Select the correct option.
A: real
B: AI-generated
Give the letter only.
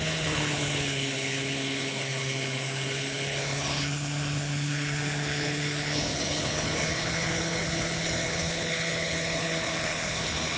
B